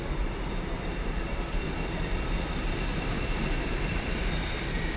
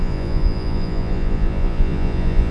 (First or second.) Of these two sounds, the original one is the first